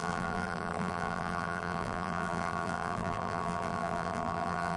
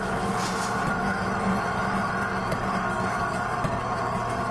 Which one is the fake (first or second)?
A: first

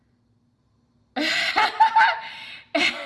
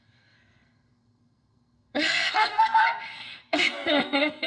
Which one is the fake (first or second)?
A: second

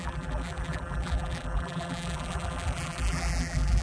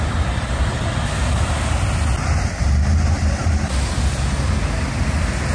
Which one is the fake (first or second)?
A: first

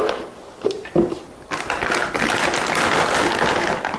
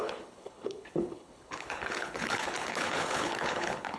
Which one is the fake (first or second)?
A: second